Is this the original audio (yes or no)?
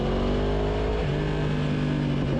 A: yes